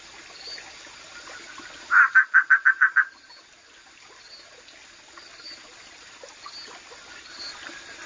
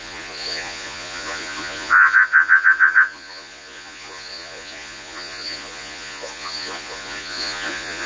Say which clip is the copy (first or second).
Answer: second